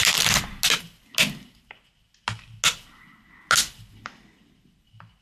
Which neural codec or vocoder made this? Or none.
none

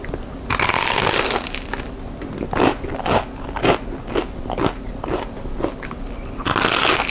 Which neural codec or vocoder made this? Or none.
none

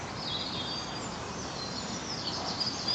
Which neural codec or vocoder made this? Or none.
none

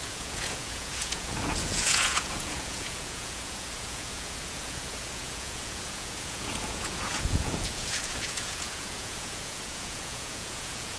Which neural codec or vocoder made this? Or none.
vocoder, Vocos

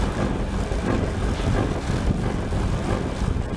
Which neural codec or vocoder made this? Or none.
none